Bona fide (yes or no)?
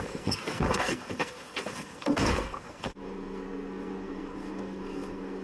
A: no